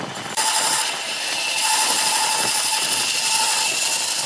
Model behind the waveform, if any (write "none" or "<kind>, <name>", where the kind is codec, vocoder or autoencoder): none